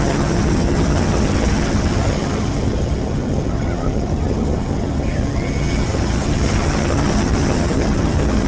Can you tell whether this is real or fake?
fake